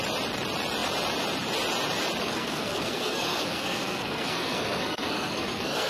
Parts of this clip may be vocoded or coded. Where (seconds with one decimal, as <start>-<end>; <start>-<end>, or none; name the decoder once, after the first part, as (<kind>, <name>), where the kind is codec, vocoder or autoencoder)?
2.2-5.9 (codec, SNAC)